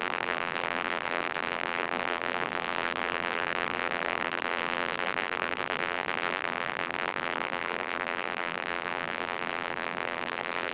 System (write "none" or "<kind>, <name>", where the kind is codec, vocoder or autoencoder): vocoder, BigVGAN v2